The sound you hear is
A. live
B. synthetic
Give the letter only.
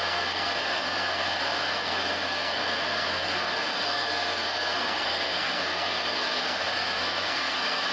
B